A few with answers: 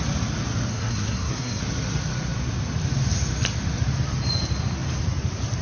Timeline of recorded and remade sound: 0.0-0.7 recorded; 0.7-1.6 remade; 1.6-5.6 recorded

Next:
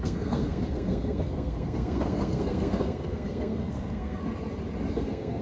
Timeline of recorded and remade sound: 0.0-4.2 remade; 4.2-4.9 recorded; 4.9-5.4 remade

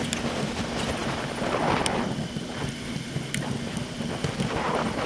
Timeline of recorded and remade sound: 0.0-5.1 recorded

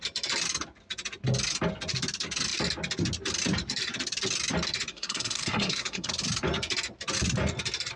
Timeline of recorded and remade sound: 0.0-4.9 recorded; 4.9-6.1 remade; 6.1-8.0 recorded